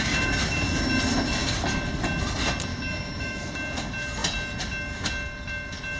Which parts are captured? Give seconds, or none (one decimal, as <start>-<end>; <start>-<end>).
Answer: 0.0-2.7; 3.5-6.0